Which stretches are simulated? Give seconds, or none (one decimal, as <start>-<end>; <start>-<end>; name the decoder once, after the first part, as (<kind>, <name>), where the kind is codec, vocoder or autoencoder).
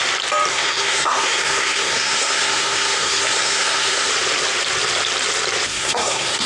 0.5-4.1 (codec, SNAC); 5.7-6.5